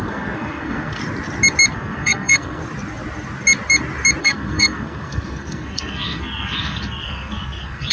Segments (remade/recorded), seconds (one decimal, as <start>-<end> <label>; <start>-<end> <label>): 0.0-1.0 remade; 1.0-1.7 recorded; 1.7-2.6 remade; 2.6-4.2 recorded; 4.2-7.9 remade